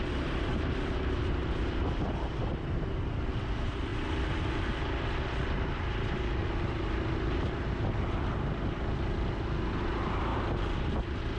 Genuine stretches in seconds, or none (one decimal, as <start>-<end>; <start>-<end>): 0.0-11.4